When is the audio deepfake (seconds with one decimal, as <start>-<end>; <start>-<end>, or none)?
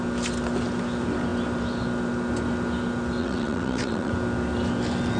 3.2-4.1